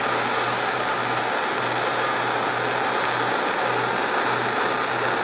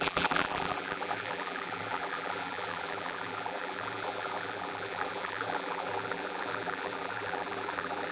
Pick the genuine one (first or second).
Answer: first